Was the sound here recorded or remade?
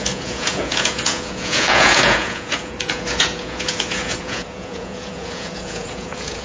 remade